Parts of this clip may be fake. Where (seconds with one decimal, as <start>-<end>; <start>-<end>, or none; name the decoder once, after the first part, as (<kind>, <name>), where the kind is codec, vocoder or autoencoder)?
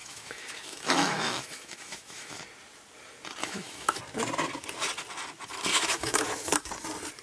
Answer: 0.0-2.4 (autoencoder, DAC-VAE); 3.4-4.0; 5.7-6.7